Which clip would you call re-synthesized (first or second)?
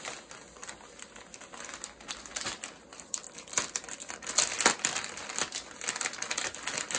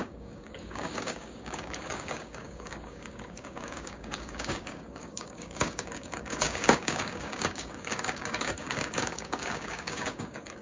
second